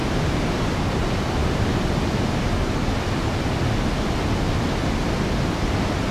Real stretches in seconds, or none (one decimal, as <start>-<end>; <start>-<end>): 0.0-6.1